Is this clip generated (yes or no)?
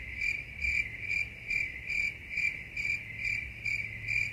no